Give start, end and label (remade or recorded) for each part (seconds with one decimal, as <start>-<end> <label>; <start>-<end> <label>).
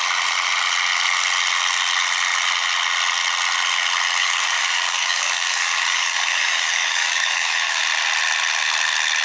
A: 0.0-4.2 recorded; 4.2-7.8 remade; 7.8-9.2 recorded